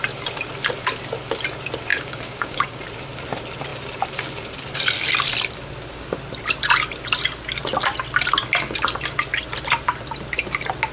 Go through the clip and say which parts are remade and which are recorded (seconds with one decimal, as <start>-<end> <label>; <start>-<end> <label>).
0.0-1.9 recorded; 1.9-2.8 remade; 2.8-10.9 recorded